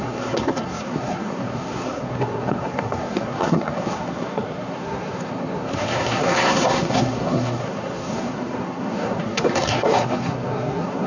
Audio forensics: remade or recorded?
remade